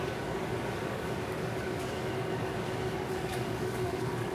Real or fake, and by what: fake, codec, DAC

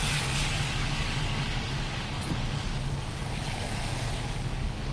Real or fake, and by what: fake, codec, DAC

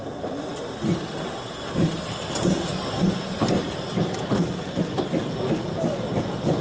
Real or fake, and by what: real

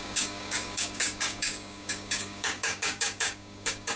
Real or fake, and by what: fake, codec, DAC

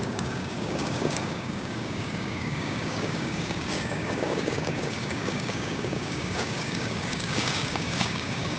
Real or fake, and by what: fake, codec, DAC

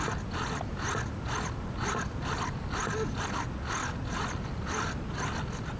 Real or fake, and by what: real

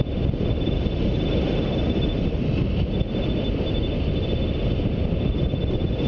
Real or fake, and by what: real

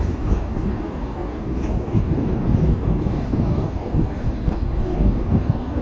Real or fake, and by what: fake, codec, DAC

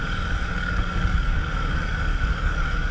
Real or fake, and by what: fake, codec, DAC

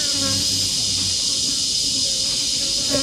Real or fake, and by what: real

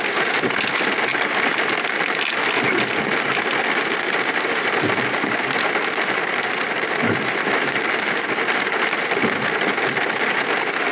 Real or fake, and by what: real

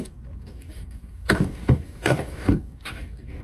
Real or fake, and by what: fake, codec, DAC